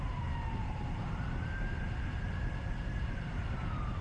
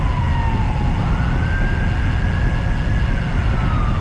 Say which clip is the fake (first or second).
first